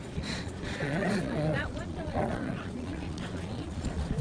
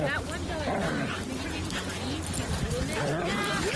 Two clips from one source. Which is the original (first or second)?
second